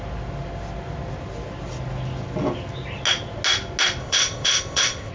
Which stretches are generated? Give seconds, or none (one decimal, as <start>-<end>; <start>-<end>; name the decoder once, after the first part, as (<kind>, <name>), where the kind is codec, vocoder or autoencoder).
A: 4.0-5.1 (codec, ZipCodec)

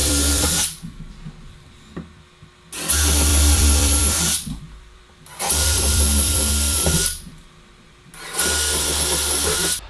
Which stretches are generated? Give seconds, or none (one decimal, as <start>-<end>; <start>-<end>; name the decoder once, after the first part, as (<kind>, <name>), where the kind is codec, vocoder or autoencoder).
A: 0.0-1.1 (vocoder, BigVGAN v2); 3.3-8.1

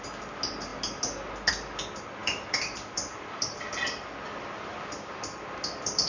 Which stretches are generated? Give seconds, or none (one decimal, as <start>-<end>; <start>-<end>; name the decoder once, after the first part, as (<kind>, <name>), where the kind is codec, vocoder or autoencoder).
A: 2.2-6.1 (vocoder, BigVGAN v2)